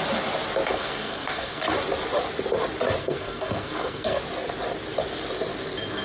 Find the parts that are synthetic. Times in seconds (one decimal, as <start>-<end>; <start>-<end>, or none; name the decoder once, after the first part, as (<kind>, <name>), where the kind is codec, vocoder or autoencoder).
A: 0.7-1.6 (codec, SNAC); 3.0-4.2